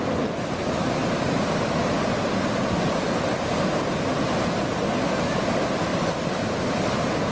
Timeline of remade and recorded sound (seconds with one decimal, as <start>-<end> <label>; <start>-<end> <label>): 0.0-7.3 recorded